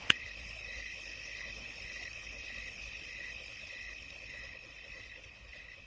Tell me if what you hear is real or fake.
fake